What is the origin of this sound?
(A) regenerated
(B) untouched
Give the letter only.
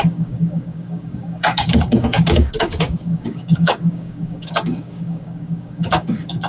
A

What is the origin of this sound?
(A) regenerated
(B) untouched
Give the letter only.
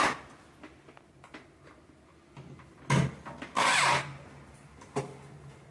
B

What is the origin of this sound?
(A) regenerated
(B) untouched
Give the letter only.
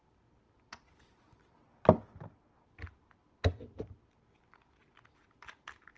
B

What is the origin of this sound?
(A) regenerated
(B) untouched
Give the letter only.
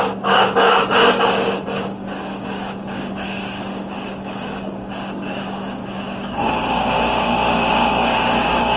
A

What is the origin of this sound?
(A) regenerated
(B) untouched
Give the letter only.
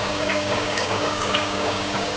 A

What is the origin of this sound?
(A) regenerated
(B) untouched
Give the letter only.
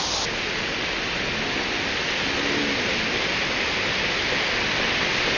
B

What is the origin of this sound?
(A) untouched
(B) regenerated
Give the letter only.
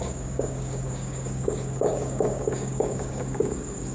B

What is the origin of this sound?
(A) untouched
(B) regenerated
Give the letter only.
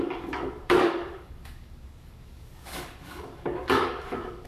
B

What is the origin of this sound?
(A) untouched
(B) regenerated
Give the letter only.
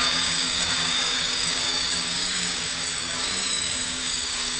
B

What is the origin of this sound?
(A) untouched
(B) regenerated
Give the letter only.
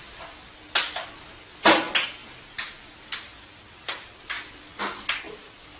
A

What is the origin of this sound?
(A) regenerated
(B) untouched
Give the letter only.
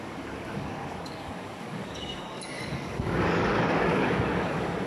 A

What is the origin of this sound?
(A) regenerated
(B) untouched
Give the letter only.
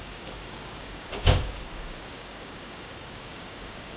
A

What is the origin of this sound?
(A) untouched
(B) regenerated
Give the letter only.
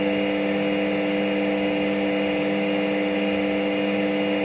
A